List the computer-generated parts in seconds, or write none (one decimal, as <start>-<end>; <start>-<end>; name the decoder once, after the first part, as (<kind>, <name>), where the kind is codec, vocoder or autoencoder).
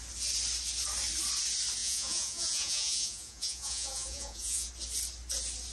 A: 1.8-4.7 (vocoder, Vocos)